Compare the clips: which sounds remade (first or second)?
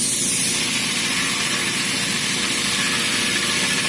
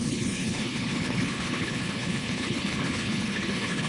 second